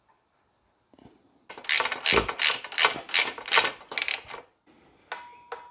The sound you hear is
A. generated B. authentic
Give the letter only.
B